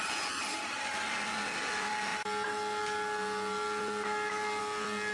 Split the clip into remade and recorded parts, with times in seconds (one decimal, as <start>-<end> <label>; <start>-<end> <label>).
0.0-5.1 recorded